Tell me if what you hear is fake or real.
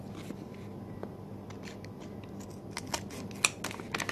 real